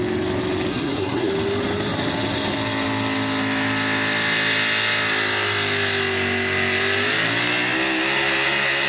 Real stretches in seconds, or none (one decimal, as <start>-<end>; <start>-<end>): 0.0-0.7; 1.3-8.9